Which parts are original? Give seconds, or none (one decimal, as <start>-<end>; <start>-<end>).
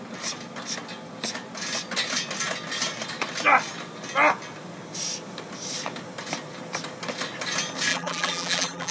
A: 0.0-7.9